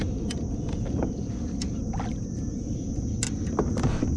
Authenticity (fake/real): real